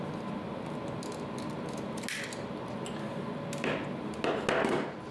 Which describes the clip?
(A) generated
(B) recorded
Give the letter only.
B